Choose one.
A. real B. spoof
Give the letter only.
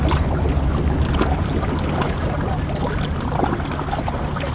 A